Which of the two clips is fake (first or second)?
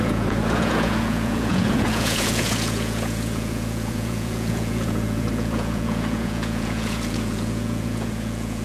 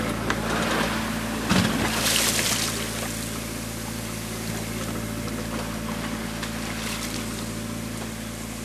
first